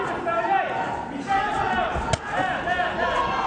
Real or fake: real